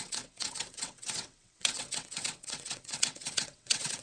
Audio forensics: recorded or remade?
remade